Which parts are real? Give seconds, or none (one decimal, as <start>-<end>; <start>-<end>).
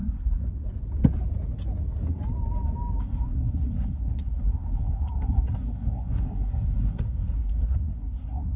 0.4-3.0